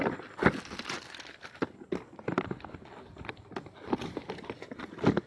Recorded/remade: recorded